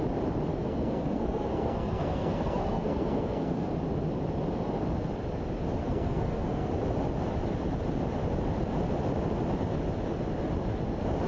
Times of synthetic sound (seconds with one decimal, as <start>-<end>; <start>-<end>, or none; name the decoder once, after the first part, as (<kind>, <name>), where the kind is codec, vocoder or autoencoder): 0.5-3.7 (codec, SNAC); 5.8-6.7